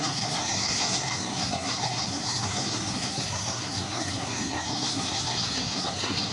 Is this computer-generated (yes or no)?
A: yes